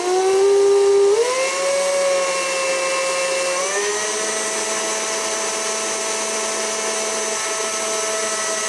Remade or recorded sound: recorded